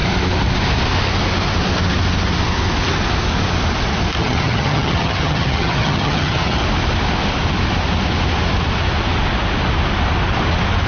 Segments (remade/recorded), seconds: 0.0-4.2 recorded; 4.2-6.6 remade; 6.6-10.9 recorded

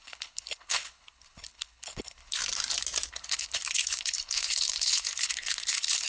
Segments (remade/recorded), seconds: 0.0-2.4 remade; 2.4-3.1 recorded; 3.1-6.1 remade